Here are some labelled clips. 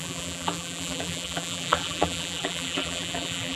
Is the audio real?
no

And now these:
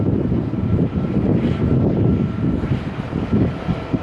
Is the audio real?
no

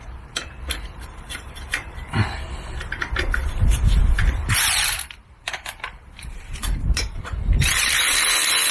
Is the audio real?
no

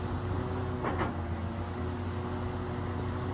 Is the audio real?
yes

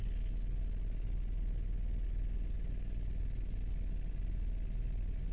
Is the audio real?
yes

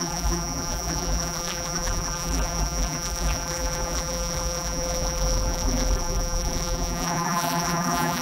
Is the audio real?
no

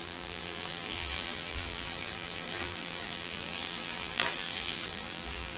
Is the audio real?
no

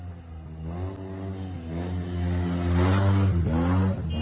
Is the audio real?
yes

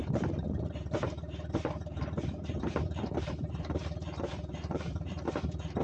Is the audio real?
no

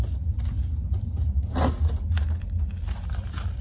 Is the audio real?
no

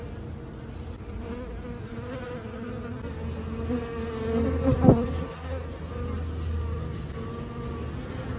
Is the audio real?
yes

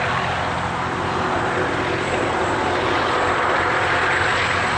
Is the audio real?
yes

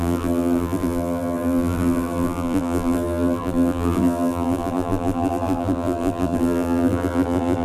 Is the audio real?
no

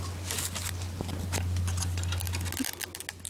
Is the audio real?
yes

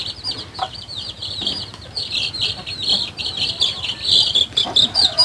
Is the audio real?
yes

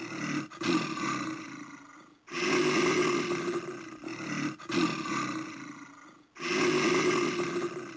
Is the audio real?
yes